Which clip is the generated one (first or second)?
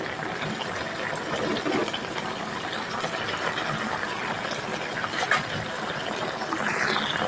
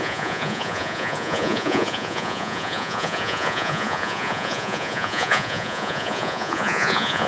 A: second